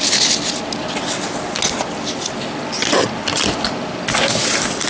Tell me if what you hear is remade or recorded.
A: recorded